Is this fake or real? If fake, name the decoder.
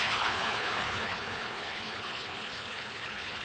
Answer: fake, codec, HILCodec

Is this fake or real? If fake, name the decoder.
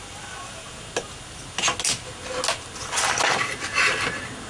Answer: real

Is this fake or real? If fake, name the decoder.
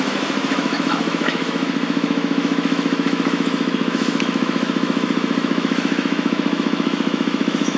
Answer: fake, autoencoder, DAC-VAE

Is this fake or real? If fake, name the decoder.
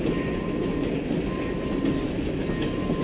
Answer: real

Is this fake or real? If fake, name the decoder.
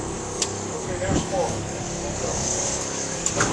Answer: fake, codec, DAC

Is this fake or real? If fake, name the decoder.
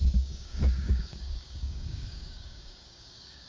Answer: fake, codec, DAC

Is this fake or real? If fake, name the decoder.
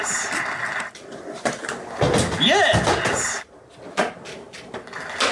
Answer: real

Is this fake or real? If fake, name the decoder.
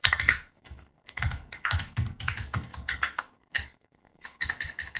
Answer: fake, codec, SNAC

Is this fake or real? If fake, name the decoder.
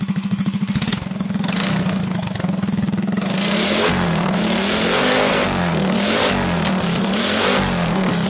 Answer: fake, codec, SNAC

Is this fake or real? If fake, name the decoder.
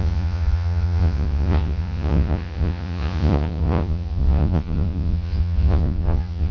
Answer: fake, vocoder, Vocos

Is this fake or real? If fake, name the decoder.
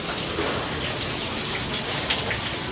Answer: real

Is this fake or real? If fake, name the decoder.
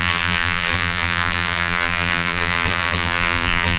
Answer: fake, vocoder, BigVGAN v2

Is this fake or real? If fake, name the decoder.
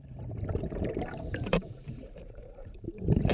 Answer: fake, vocoder, BigVGAN v2